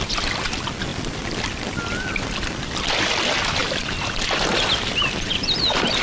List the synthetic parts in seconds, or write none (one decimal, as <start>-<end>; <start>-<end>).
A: none